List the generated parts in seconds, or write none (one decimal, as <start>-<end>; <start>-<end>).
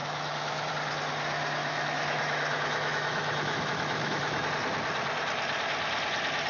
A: 0.0-0.7; 1.6-4.5